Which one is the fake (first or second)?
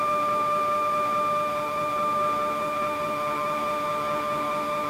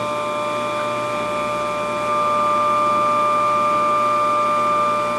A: first